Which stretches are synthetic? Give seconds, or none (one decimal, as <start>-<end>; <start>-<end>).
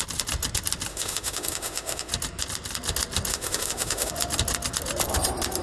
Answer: 0.9-2.1; 3.3-4.1